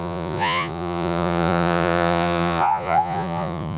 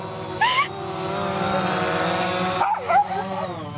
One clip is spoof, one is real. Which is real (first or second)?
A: second